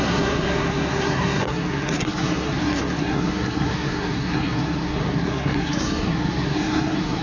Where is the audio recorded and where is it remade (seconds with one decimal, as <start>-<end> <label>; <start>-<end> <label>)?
0.0-7.2 remade